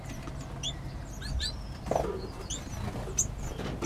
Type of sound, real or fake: real